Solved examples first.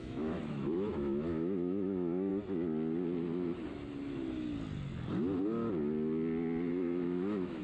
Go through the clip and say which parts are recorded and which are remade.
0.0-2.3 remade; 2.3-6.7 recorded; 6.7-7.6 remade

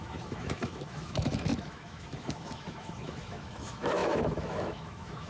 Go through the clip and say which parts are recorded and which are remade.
0.0-5.3 remade

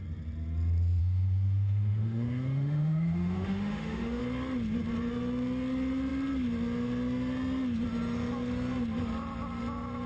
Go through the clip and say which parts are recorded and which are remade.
0.0-1.0 recorded; 1.0-4.2 remade; 4.2-10.1 recorded

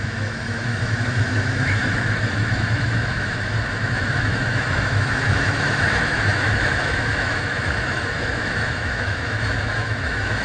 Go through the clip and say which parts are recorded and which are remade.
0.0-10.4 remade

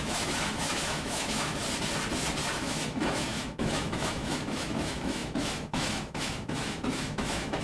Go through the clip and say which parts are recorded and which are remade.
0.0-1.6 remade; 1.6-2.5 recorded; 2.5-7.6 remade

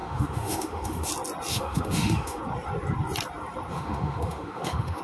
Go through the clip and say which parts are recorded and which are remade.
0.0-1.1 remade; 1.1-1.5 recorded; 1.5-2.4 remade; 2.4-3.7 recorded; 3.7-5.0 remade

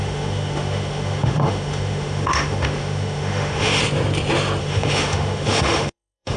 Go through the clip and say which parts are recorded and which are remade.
0.0-3.8 remade; 3.8-4.6 recorded; 4.6-6.4 remade

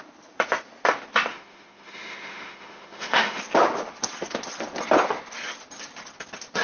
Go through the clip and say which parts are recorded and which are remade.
0.0-1.3 recorded; 1.3-3.4 remade; 3.4-6.6 recorded